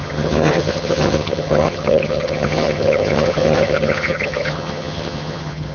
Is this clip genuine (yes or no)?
no